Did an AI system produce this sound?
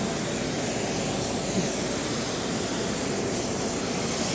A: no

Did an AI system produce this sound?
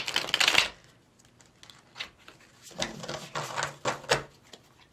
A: no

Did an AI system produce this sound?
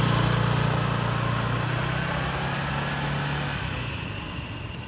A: no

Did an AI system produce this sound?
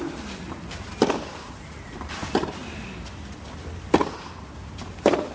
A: no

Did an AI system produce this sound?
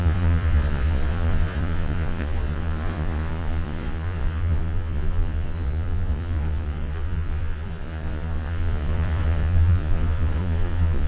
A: yes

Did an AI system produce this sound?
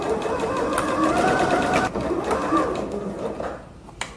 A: no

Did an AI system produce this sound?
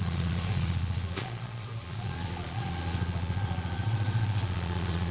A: yes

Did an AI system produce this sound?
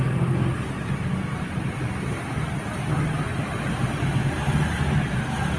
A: no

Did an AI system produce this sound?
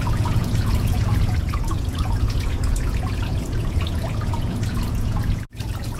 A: yes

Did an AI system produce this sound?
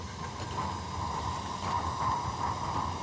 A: no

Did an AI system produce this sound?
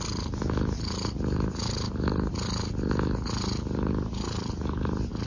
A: no